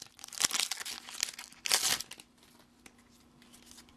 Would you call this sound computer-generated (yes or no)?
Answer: no